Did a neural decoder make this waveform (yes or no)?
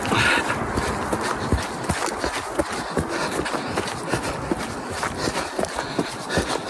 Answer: no